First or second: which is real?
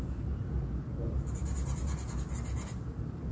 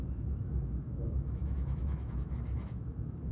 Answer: first